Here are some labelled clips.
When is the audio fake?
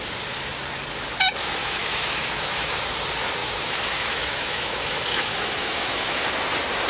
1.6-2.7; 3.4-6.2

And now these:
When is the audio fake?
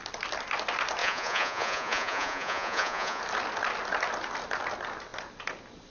1.0-3.2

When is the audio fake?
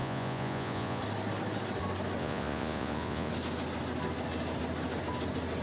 0.0-1.0; 2.2-3.3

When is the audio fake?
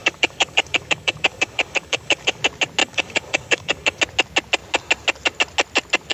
0.0-2.4; 2.8-4.0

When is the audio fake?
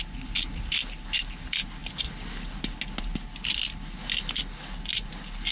none